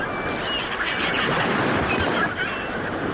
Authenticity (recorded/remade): recorded